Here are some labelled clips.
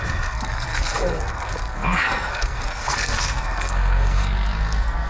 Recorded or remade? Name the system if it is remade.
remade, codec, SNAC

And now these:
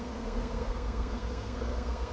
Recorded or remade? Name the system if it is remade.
remade, codec, SNAC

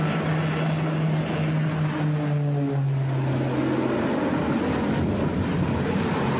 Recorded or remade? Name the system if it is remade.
recorded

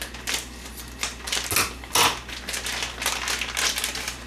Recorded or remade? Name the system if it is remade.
recorded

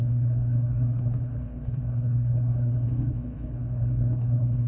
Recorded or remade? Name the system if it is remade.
remade, codec, HILCodec